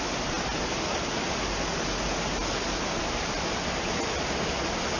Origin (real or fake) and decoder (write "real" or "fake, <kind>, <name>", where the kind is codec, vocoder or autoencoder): real